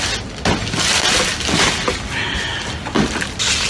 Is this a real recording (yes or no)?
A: yes